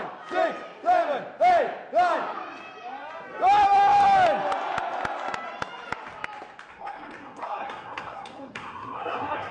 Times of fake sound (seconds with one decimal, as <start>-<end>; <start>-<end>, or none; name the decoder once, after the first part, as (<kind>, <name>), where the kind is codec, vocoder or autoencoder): 6.7-9.5 (codec, SNAC)